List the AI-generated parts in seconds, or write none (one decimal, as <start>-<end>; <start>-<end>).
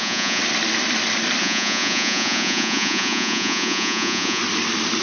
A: 0.0-0.4; 1.4-4.4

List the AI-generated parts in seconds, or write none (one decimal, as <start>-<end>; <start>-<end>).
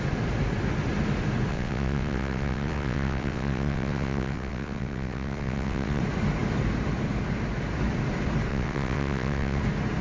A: 1.5-6.0; 8.5-9.6